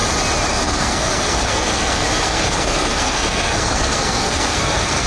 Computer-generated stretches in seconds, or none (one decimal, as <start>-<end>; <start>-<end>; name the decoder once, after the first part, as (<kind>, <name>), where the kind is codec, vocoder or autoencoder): 0.5-5.1 (codec, SNAC)